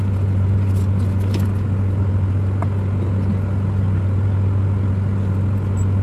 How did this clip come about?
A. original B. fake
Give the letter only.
A